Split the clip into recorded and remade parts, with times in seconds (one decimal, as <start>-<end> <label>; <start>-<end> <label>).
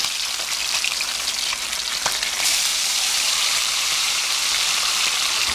0.0-2.7 recorded; 2.7-4.4 remade; 4.4-5.5 recorded